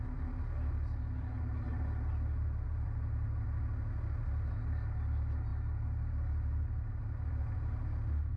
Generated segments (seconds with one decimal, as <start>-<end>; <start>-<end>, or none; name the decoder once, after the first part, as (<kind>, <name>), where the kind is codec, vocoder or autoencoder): none